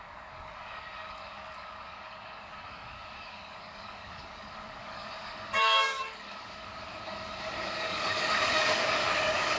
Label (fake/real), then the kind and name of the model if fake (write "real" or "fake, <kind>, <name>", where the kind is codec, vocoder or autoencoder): fake, codec, DAC